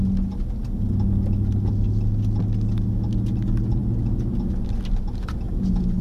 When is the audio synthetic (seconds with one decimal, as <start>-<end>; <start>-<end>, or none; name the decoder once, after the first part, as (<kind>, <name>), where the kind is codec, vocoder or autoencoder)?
none